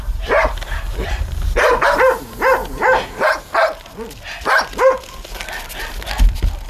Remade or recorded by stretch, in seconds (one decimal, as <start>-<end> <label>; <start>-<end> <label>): 0.0-2.6 remade; 2.6-6.7 recorded